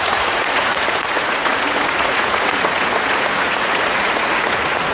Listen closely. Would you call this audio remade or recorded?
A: remade